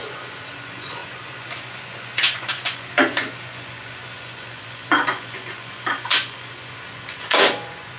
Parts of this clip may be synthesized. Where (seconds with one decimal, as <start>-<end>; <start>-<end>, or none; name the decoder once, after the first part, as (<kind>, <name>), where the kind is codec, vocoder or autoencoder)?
0.0-8.0 (vocoder, Vocos)